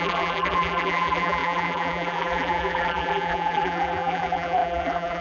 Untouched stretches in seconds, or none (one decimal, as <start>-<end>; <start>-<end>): none